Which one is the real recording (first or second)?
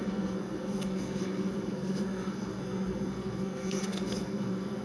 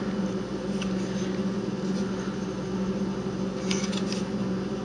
second